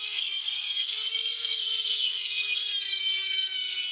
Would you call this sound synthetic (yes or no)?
yes